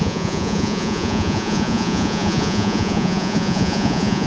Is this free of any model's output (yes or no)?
no